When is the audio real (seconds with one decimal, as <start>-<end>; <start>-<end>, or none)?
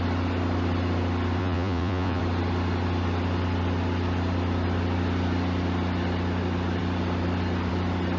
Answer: 0.0-1.4; 2.2-8.2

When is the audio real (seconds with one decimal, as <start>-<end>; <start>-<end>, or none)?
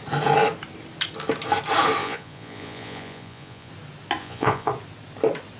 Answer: 0.0-2.0; 3.7-4.2; 4.7-5.6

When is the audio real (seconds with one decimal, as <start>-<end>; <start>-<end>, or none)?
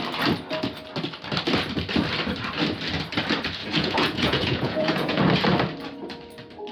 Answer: 0.0-3.6; 5.2-6.7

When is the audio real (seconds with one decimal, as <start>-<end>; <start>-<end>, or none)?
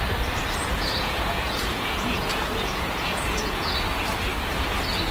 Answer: 0.0-0.6; 3.7-5.1